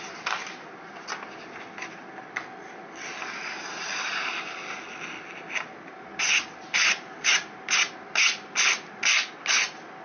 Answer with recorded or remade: recorded